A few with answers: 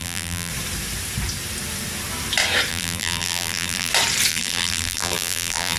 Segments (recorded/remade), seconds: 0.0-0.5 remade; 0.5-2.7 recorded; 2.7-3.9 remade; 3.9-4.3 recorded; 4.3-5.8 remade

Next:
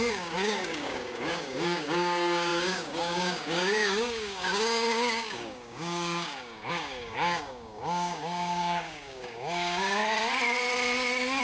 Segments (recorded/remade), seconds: 0.0-10.0 remade; 10.0-11.4 recorded

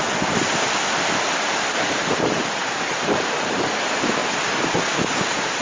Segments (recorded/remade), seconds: 0.0-1.4 recorded; 1.4-4.2 remade; 4.2-5.0 recorded; 5.0-5.6 remade